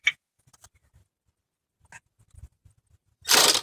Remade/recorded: remade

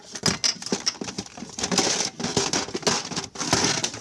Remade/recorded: recorded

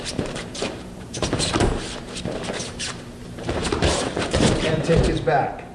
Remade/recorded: remade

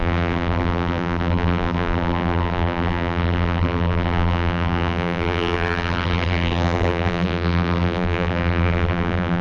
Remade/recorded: remade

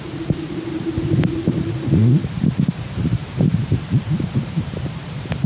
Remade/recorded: remade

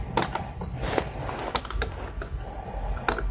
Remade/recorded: recorded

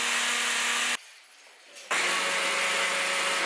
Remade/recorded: recorded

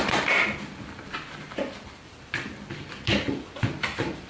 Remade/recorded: remade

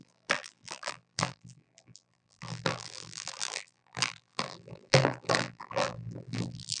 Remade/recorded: remade